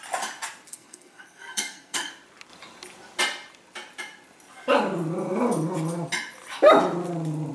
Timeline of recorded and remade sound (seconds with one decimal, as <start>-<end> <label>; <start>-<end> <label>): 0.0-0.7 recorded; 0.7-2.1 remade; 2.1-7.5 recorded